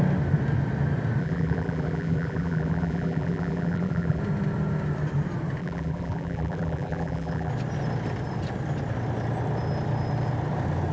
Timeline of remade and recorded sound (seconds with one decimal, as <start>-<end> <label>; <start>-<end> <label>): 0.0-1.2 recorded; 1.2-4.2 remade; 4.2-5.6 recorded; 5.6-7.5 remade; 7.5-10.9 recorded